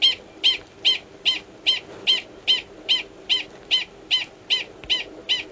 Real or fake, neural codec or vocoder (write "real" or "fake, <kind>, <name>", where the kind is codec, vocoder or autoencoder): real